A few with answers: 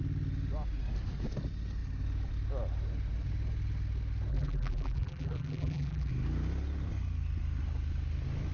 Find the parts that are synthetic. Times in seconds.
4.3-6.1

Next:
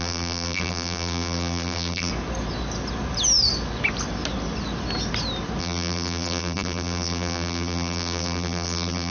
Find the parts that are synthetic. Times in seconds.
0.0-2.1; 5.6-9.1